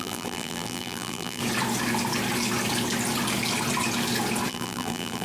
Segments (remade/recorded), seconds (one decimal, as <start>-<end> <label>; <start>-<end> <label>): 0.0-1.4 remade; 1.4-4.5 recorded; 4.5-5.2 remade